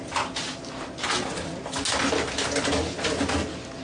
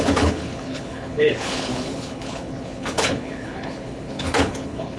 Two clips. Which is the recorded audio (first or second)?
first